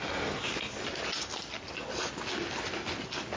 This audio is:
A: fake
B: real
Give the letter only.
B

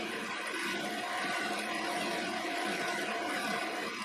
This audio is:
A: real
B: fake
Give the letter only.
B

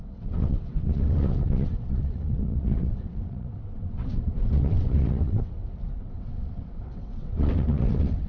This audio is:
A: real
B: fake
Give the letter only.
B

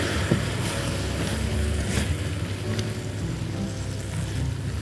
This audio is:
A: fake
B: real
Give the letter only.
B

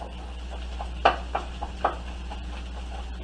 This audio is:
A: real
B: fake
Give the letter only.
A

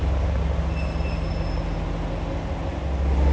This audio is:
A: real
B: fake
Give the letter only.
A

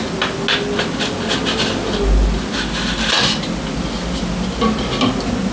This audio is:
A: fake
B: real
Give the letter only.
B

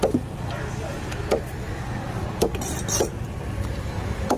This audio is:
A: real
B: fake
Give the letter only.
A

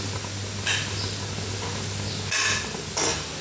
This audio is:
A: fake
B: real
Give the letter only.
B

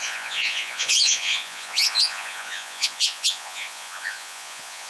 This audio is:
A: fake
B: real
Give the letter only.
A